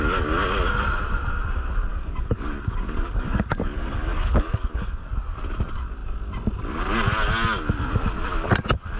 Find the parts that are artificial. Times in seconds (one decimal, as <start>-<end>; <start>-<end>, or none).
1.9-5.1